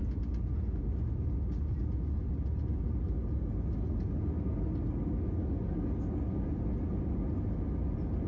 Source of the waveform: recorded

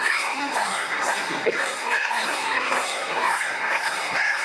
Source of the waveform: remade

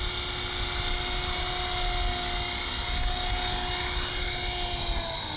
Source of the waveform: recorded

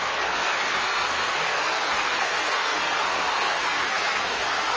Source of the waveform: remade